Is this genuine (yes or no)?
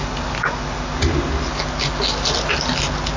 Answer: yes